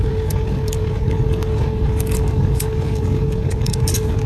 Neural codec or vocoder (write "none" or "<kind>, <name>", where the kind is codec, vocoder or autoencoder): codec, DAC